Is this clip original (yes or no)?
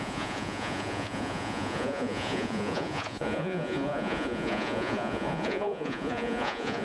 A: no